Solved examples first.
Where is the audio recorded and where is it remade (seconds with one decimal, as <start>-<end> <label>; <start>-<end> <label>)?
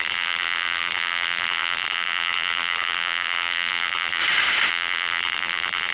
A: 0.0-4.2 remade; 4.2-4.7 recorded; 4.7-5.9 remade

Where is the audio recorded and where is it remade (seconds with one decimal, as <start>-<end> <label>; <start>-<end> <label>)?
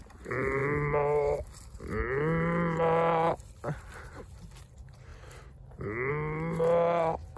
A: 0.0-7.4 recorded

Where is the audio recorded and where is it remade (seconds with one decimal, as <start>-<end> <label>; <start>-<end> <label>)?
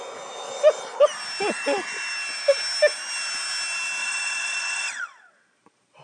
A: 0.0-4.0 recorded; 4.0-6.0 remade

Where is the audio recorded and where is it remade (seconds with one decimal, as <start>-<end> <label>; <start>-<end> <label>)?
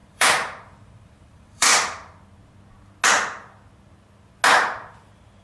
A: 0.0-1.7 remade; 1.7-4.9 recorded; 4.9-5.4 remade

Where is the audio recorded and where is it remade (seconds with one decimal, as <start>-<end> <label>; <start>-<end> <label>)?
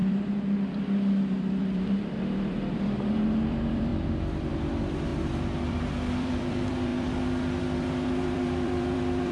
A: 0.0-9.3 remade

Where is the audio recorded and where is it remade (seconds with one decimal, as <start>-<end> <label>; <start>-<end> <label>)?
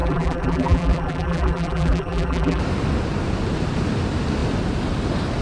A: 0.0-2.6 remade; 2.6-5.4 recorded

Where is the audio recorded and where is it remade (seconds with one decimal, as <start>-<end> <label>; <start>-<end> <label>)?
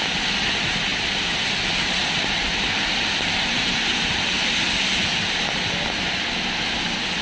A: 0.0-7.2 recorded